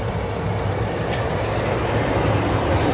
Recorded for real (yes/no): yes